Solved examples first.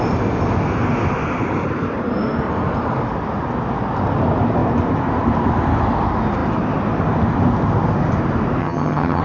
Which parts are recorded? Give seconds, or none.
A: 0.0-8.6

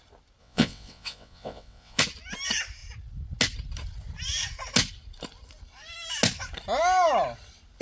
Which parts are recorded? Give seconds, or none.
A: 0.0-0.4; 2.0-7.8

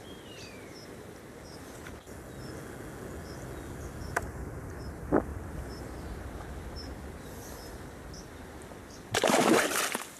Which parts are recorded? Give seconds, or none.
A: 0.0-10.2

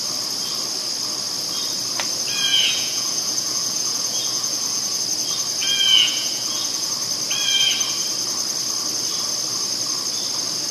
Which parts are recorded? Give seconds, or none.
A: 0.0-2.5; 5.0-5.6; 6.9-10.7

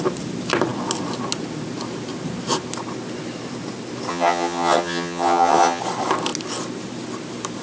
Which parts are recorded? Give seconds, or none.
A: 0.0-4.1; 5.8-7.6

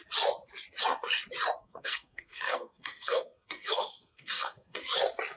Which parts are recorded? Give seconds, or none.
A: 0.0-1.6; 4.8-5.4